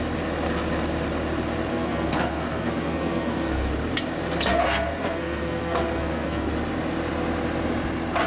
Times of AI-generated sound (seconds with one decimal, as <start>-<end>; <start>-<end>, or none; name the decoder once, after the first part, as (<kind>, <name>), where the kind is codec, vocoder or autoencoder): 1.7-3.7 (codec, SNAC); 4.5-6.5